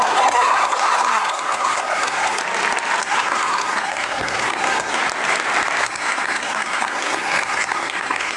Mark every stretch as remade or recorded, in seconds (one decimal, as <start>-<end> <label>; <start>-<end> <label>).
0.0-2.4 remade; 2.4-3.0 recorded; 3.0-5.0 remade; 5.0-5.8 recorded; 5.8-8.4 remade